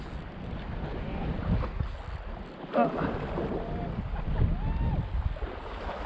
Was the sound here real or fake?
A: real